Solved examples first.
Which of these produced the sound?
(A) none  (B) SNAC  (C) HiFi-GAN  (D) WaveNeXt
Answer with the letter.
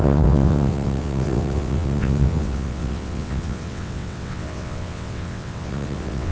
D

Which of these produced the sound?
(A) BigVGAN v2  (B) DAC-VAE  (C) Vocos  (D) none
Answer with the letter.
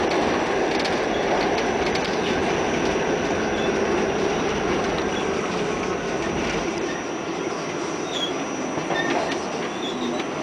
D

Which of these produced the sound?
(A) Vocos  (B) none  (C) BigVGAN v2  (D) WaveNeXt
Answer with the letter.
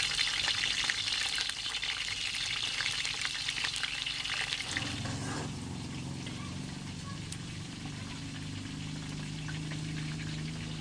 B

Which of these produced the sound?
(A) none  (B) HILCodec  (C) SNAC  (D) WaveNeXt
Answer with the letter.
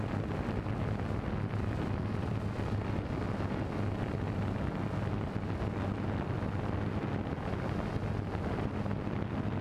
A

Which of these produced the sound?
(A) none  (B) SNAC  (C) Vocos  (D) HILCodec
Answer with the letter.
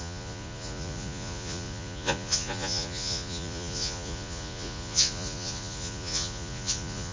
C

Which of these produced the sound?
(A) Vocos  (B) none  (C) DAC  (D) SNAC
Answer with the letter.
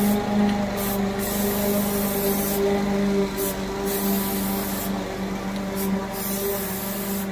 B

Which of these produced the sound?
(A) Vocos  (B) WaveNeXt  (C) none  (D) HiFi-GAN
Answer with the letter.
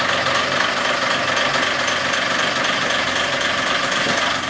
C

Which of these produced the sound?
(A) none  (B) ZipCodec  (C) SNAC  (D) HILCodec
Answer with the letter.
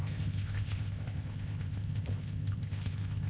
B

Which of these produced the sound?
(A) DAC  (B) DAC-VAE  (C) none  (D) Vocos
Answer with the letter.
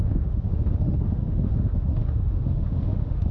B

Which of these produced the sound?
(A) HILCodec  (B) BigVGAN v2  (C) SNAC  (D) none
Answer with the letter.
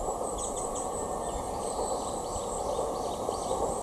D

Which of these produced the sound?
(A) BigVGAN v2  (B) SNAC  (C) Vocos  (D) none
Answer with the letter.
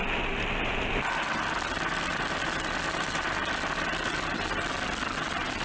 D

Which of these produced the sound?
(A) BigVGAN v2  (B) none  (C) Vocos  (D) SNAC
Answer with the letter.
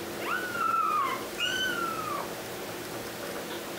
B